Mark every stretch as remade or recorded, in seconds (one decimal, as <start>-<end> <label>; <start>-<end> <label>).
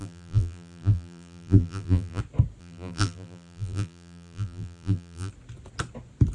0.0-2.2 remade; 2.2-2.6 recorded; 2.6-5.3 remade; 5.3-6.3 recorded